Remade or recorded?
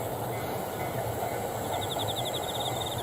recorded